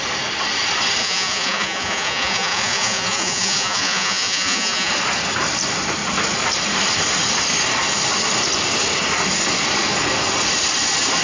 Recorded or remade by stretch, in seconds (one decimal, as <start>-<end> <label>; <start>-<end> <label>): 0.0-1.0 recorded; 1.0-4.9 remade; 4.9-11.2 recorded

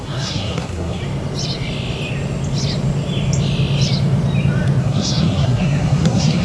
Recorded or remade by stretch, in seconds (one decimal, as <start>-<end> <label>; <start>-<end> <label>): 0.0-1.0 remade; 1.0-4.8 recorded; 4.8-6.4 remade

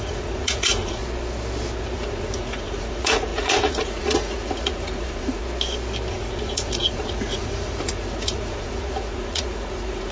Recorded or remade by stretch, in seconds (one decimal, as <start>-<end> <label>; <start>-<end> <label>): 0.0-1.0 remade; 1.0-1.8 recorded; 1.8-5.4 remade; 5.4-6.1 recorded; 6.1-10.1 remade